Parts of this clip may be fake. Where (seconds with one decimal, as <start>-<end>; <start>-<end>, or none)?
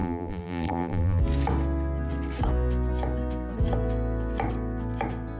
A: 0.0-1.2